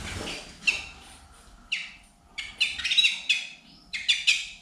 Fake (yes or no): no